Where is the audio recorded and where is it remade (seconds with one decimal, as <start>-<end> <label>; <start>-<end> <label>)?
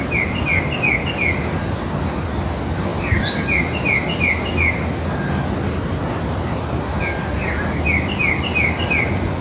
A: 0.0-9.4 recorded